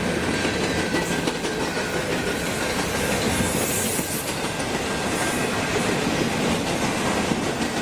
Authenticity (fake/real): real